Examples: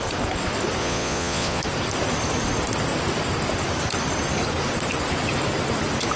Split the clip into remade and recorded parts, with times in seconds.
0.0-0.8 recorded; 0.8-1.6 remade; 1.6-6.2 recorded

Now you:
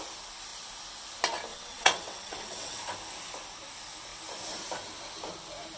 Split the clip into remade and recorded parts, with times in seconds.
0.0-1.5 recorded; 1.5-2.8 remade; 2.8-5.8 recorded

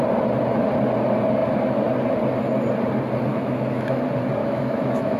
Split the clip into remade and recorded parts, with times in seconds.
0.0-3.3 recorded; 3.3-4.0 remade; 4.0-4.4 recorded; 4.4-5.2 remade

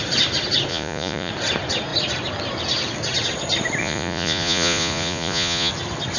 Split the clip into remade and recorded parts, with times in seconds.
0.0-0.7 recorded; 0.7-1.3 remade; 1.3-3.8 recorded; 3.8-5.7 remade; 5.7-6.2 recorded

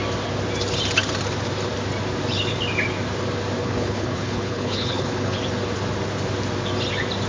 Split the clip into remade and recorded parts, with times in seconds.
0.0-3.6 recorded; 3.6-5.4 remade; 5.4-7.3 recorded